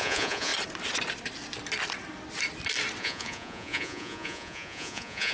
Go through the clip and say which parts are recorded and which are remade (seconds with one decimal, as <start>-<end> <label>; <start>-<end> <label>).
0.0-0.5 remade; 0.5-3.0 recorded; 3.0-5.3 remade